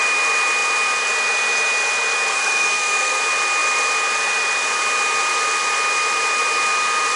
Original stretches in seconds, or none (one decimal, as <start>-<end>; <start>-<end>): 0.0-2.3; 3.2-7.2